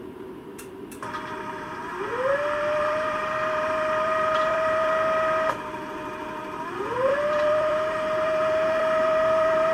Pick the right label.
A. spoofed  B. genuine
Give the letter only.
A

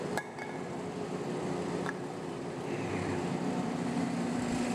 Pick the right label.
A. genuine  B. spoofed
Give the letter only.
B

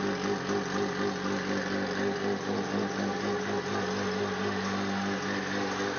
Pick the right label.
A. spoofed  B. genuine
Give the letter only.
B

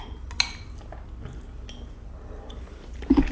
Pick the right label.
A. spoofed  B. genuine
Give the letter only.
B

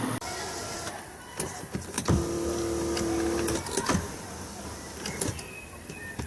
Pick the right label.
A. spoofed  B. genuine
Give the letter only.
A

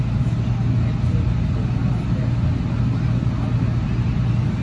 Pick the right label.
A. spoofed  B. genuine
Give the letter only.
B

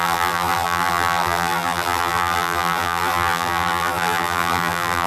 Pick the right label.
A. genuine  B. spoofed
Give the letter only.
B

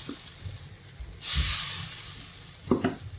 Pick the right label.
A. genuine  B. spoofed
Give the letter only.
A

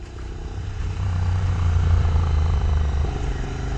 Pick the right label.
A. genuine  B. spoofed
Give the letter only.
B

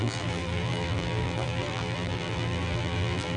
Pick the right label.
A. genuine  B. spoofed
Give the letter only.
B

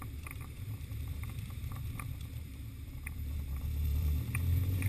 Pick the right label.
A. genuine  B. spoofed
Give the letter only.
B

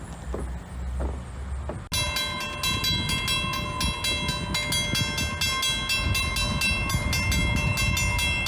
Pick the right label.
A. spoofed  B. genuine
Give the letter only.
B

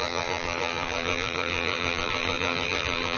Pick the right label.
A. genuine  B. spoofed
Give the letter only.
B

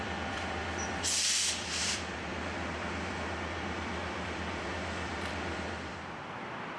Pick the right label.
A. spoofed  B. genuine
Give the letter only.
A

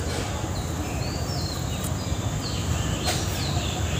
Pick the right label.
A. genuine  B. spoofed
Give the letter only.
A